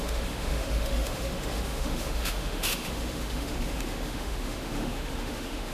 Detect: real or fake fake